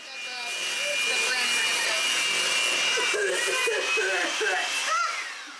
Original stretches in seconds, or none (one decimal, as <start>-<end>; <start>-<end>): 0.0-5.6